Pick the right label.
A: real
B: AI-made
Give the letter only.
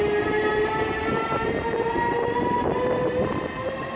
A